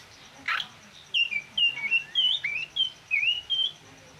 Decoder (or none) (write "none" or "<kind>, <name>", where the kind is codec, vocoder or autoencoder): none